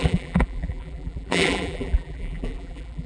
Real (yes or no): no